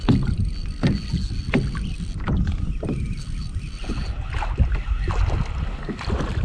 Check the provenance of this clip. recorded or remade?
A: recorded